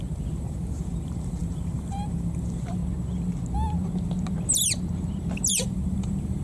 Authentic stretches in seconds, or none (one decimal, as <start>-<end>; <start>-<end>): 2.8-5.5